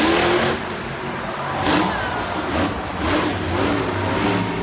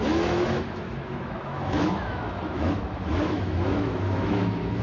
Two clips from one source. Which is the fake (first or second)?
second